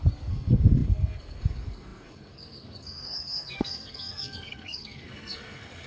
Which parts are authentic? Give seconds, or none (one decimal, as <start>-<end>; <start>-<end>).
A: none

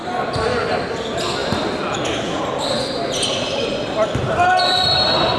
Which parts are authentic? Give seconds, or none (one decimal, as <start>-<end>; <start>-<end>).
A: 0.0-5.4

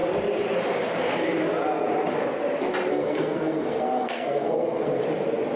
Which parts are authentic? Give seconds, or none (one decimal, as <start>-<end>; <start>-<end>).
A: 0.0-2.9; 5.0-5.6

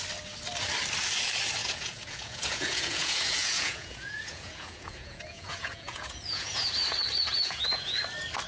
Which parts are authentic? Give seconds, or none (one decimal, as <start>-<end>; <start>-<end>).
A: 0.0-1.6; 6.7-7.3; 8.0-8.5

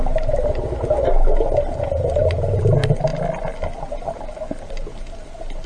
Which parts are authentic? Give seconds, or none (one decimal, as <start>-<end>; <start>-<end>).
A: 0.0-5.7